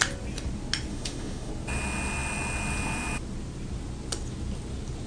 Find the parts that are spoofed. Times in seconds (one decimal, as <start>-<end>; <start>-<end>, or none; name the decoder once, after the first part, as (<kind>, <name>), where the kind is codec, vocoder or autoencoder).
0.9-1.5 (autoencoder, DAC-VAE)